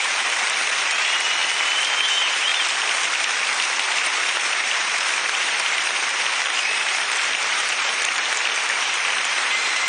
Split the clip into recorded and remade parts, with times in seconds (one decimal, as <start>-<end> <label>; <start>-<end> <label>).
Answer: 0.0-1.4 remade; 1.4-2.1 recorded; 2.1-2.5 remade; 2.5-4.0 recorded; 4.0-9.9 remade

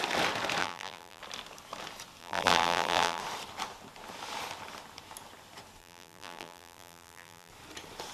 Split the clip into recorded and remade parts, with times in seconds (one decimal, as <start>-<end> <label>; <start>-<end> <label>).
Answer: 0.0-0.6 recorded; 0.6-1.2 remade; 1.2-2.2 recorded; 2.2-3.2 remade; 3.2-5.8 recorded; 5.8-7.5 remade; 7.5-8.1 recorded

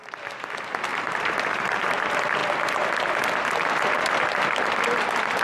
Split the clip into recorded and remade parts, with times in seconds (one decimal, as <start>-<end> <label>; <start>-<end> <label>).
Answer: 0.0-0.9 recorded; 0.9-2.0 remade; 2.0-5.4 recorded

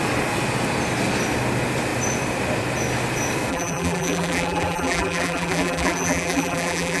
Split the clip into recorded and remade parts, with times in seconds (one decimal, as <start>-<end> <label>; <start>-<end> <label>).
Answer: 0.0-3.5 recorded; 3.5-7.0 remade

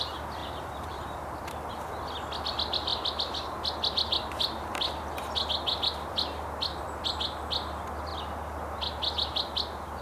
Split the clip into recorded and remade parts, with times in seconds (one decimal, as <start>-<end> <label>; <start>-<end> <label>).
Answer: 0.0-0.4 recorded; 0.4-1.4 remade; 1.4-10.0 recorded

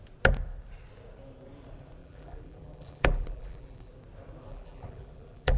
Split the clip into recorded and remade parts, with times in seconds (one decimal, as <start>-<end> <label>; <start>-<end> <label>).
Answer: 0.0-2.0 recorded; 2.0-3.9 remade; 3.9-4.5 recorded; 4.5-5.6 remade